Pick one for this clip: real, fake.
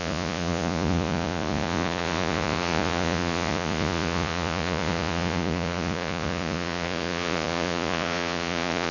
fake